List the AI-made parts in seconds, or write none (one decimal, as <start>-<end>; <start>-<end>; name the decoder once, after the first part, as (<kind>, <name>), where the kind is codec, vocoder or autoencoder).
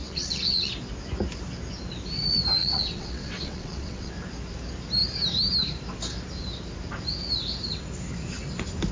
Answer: 0.0-0.7 (vocoder, WaveNeXt); 2.6-4.1